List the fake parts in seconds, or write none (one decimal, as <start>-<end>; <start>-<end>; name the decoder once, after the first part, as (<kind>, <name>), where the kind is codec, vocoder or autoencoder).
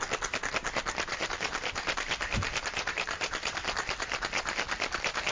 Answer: 1.1-3.6 (vocoder, BigVGAN v2)